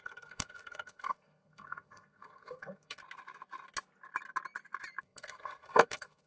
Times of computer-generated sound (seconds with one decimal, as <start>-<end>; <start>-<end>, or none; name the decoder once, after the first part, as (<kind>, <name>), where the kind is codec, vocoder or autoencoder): 0.0-3.0 (codec, SNAC); 5.0-6.3